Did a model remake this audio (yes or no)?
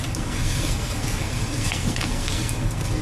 yes